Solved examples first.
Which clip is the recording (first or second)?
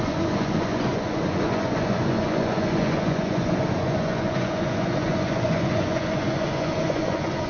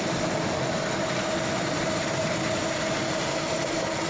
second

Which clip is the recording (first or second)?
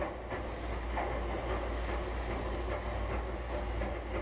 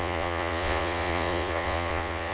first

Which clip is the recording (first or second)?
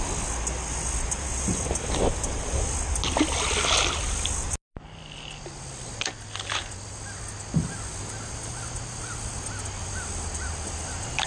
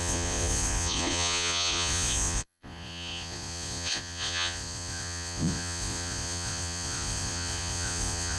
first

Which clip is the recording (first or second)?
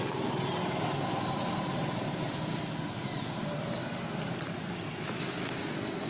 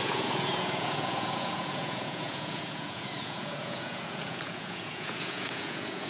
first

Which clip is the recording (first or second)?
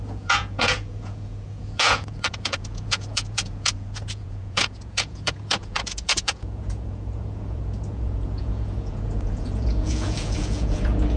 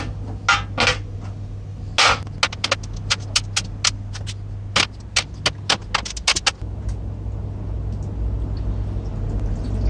second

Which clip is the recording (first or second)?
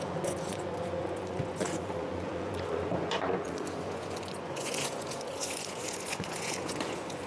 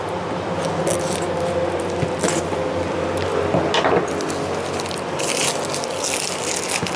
second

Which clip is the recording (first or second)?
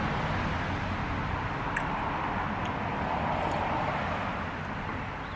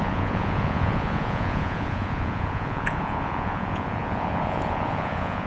first